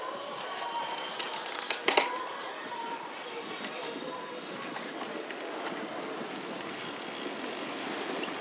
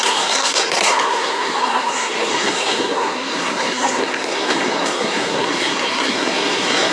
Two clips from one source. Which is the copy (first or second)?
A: second